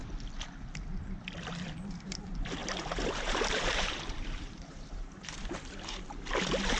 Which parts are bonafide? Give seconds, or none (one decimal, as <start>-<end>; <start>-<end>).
0.0-2.6; 5.4-6.8